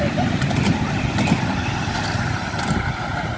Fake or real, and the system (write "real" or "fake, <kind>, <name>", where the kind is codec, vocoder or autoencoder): real